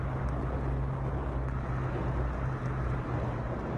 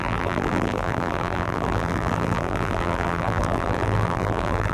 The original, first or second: first